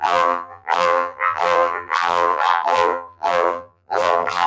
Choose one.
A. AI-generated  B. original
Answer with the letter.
A